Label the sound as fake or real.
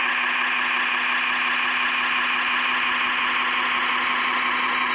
real